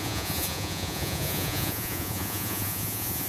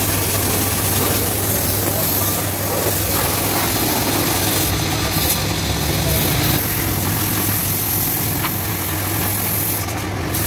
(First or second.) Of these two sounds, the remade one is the first